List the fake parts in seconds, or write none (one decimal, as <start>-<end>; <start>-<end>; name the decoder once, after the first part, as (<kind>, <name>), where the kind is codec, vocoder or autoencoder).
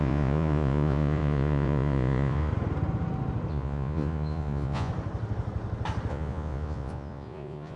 0.0-2.5 (vocoder, Vocos); 3.5-4.9; 6.1-7.8